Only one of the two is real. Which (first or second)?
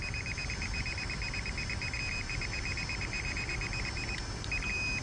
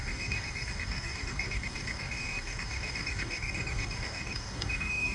first